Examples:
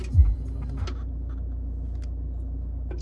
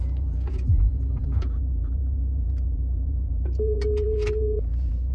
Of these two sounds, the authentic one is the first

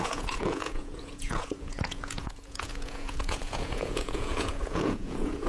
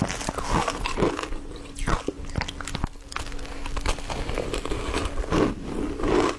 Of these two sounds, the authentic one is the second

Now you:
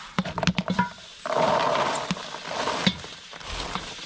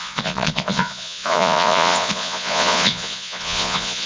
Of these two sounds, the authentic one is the first